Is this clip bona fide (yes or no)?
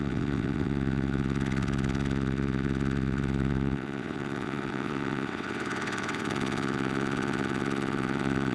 no